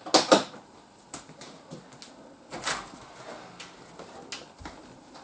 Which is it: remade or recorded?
recorded